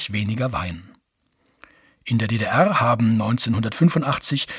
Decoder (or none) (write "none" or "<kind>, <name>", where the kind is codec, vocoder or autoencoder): none